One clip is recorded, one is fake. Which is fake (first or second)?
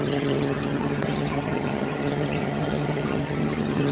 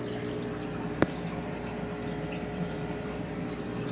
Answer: first